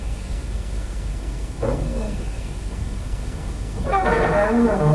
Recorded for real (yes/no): no